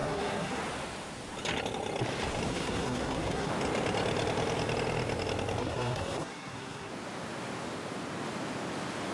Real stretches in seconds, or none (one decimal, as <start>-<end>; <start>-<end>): 0.6-2.5; 3.5-5.6; 6.9-9.1